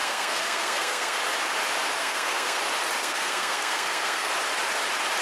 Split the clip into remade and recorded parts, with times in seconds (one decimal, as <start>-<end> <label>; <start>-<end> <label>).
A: 0.0-1.2 remade; 1.2-2.0 recorded; 2.0-2.6 remade; 2.6-3.0 recorded; 3.0-4.3 remade; 4.3-5.2 recorded